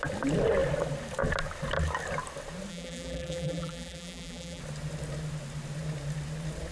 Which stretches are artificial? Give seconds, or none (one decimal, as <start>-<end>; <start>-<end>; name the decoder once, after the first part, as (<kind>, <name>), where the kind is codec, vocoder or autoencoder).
2.7-4.6 (vocoder, BigVGAN v2)